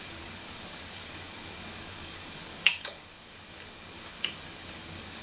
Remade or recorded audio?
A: remade